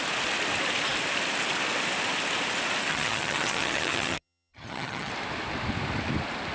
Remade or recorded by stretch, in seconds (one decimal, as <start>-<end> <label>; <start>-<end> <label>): 0.0-2.9 recorded; 2.9-5.1 remade; 5.1-6.5 recorded